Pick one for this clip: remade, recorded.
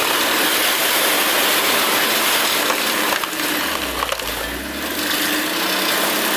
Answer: recorded